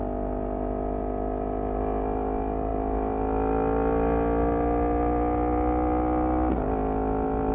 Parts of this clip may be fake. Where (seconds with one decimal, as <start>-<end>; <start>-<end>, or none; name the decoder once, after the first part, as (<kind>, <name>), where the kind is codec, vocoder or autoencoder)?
none